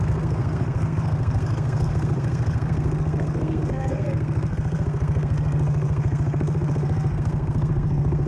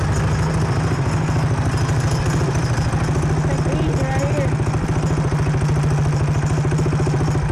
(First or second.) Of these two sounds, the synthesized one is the first